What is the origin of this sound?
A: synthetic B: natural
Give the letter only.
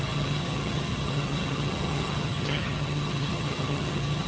A